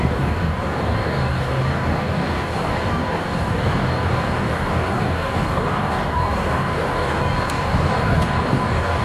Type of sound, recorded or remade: remade